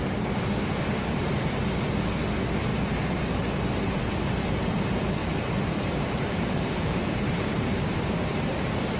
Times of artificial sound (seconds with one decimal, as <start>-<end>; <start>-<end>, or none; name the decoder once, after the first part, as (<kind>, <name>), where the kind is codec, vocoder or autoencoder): 2.7-3.2 (vocoder, BigVGAN v2); 5.2-9.0